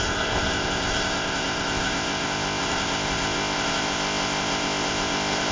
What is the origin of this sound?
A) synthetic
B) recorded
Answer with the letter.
A